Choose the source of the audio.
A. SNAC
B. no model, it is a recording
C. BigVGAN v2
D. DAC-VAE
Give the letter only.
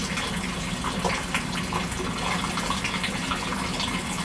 B